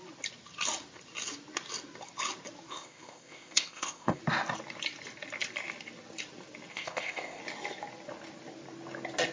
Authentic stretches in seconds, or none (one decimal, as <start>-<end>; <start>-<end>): 0.0-2.7; 4.2-6.7; 7.4-9.3